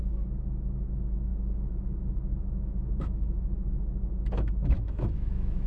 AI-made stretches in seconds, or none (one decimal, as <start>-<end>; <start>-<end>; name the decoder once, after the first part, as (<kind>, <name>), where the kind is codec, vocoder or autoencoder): 0.0-5.7 (autoencoder, DAC-VAE)